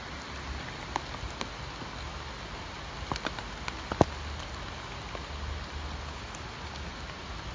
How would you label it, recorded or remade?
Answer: recorded